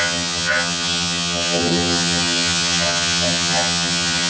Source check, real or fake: fake